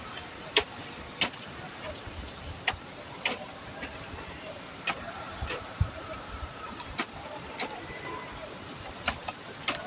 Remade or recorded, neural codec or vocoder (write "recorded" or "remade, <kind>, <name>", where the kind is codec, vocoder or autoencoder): remade, vocoder, BigVGAN v2